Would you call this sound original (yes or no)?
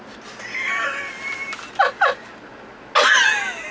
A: yes